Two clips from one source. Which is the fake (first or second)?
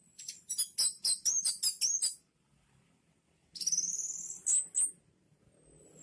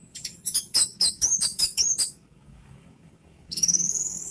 second